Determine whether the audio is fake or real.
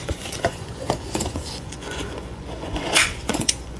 fake